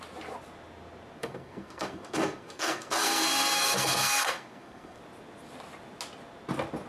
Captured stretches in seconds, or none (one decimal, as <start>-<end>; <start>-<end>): 0.0-1.2; 5.0-6.9